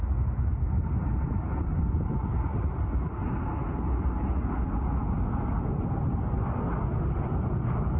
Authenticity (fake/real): real